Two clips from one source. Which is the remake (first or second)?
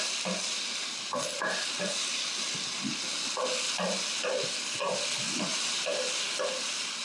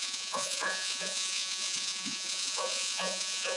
second